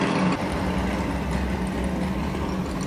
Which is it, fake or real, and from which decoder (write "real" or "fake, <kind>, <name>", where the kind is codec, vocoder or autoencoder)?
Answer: real